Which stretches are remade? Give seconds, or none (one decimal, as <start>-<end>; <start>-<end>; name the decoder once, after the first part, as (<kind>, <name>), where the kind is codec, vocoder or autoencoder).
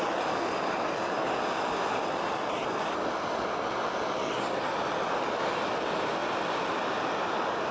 none